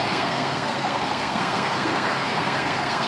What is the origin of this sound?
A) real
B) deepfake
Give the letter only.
B